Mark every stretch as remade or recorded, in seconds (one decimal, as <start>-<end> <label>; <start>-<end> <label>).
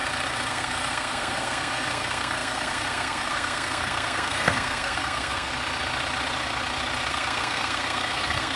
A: 0.0-0.5 recorded; 0.5-5.5 remade; 5.5-7.1 recorded; 7.1-8.6 remade